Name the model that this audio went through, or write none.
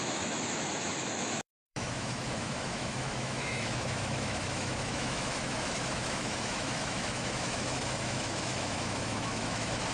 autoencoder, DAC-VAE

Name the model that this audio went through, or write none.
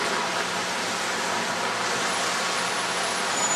none